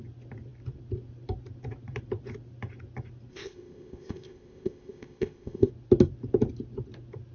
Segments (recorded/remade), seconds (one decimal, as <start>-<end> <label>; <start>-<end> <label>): 0.0-3.3 recorded; 3.3-5.7 remade; 5.7-7.3 recorded